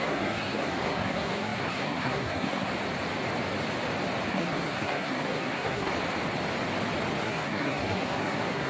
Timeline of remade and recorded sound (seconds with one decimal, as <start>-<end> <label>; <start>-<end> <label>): 0.0-2.7 remade; 2.7-4.3 recorded; 4.3-5.9 remade; 5.9-7.2 recorded; 7.2-8.7 remade